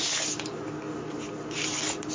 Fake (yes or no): no